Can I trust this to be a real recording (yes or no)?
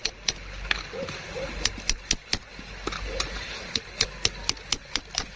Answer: yes